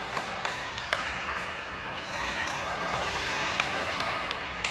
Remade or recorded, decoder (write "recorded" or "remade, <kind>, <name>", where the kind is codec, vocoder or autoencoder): remade, codec, SNAC